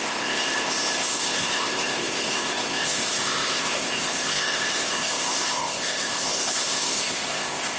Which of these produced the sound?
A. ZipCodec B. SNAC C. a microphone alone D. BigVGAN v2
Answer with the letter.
A